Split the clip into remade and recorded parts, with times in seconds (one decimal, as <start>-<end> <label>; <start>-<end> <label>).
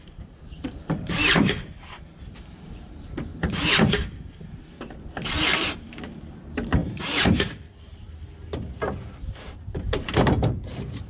0.0-3.3 remade; 3.3-4.7 recorded; 4.7-11.1 remade